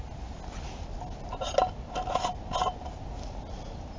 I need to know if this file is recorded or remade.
recorded